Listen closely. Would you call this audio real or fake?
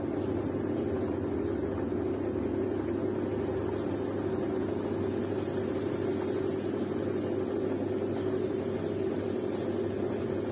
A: real